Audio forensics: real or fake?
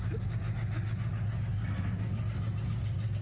real